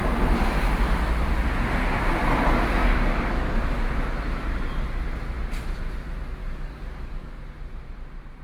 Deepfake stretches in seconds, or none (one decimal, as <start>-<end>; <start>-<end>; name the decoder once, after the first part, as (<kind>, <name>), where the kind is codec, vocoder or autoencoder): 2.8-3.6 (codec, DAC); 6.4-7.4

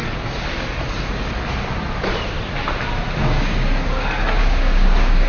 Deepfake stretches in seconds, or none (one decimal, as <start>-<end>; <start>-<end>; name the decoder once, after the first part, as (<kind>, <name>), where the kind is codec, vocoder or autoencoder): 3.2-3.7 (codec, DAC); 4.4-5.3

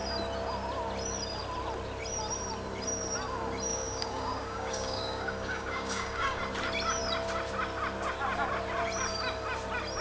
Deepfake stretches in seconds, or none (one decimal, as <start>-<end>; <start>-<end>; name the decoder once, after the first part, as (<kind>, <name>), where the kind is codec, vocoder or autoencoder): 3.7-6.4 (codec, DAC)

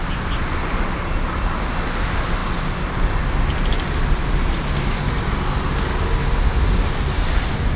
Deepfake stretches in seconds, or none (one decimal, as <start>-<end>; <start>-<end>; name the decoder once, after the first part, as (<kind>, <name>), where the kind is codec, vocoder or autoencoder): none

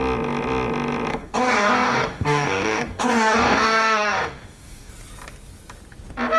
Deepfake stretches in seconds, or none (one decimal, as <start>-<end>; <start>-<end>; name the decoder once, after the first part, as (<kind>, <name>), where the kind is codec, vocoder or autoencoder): 1.1-4.9 (codec, DAC)

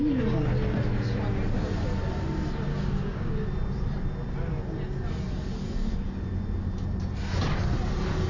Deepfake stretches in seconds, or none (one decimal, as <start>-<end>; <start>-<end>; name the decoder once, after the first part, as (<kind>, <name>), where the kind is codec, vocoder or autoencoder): 2.7-3.3 (codec, DAC)